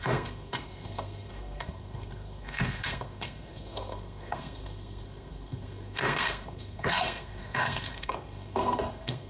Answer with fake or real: fake